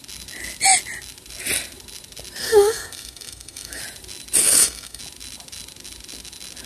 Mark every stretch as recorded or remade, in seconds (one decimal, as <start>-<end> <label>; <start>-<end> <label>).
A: 0.0-2.4 recorded; 2.4-3.8 remade; 3.8-4.4 recorded; 4.4-5.0 remade; 5.0-6.7 recorded